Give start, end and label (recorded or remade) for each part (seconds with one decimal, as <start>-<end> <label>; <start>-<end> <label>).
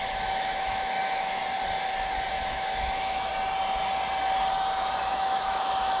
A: 0.0-1.4 remade; 1.4-2.3 recorded; 2.3-3.3 remade; 3.3-5.1 recorded; 5.1-6.0 remade